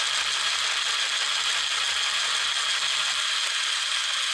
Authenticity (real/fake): real